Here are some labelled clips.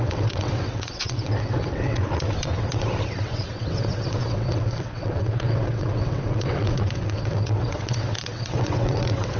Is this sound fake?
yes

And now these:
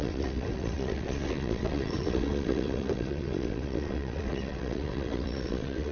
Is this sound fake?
yes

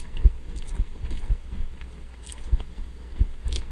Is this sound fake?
yes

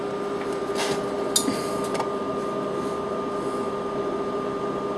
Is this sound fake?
no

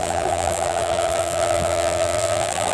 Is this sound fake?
yes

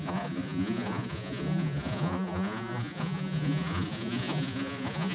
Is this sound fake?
yes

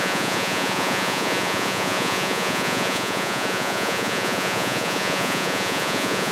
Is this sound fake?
yes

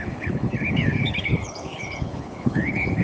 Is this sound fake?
yes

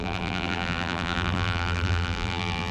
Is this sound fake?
yes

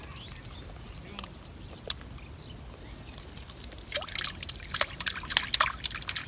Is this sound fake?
no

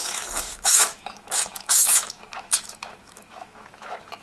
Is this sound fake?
yes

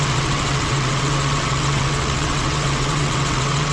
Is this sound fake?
yes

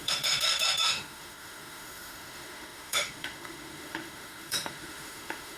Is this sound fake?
yes